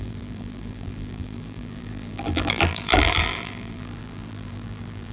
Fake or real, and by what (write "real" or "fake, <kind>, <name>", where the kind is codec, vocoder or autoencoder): fake, vocoder, BigVGAN v2